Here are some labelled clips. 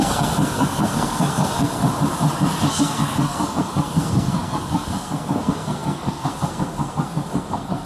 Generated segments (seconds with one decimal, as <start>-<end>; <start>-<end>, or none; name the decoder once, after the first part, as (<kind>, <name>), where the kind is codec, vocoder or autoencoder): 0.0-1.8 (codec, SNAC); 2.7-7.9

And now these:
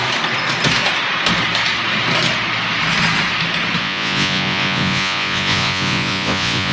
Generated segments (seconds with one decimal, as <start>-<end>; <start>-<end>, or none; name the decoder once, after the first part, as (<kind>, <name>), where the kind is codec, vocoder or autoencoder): 3.8-6.7 (vocoder, Vocos)

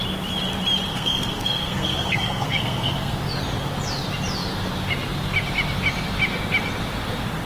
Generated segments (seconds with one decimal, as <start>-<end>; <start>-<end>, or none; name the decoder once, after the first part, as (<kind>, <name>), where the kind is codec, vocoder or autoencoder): 0.9-3.2 (codec, SNAC)

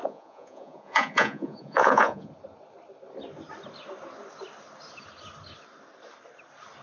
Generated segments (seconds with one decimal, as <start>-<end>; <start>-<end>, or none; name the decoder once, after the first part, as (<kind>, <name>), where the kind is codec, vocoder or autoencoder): 0.0-2.3 (vocoder, Vocos)

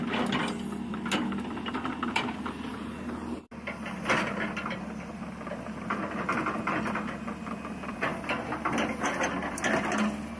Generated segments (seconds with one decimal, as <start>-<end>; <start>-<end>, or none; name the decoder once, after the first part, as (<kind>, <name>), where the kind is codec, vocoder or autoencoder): none